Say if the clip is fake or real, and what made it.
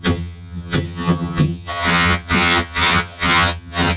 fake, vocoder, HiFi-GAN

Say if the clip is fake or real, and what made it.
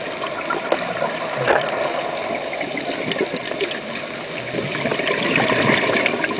real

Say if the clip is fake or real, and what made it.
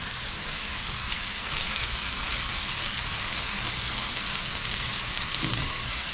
fake, codec, SNAC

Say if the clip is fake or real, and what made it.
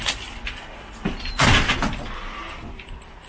real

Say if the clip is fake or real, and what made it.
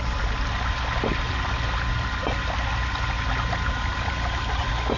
real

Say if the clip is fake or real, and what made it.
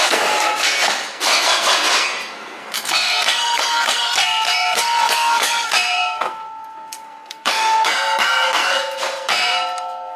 fake, codec, SNAC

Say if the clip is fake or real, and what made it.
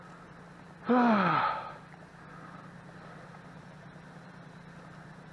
real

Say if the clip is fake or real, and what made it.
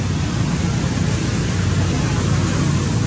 real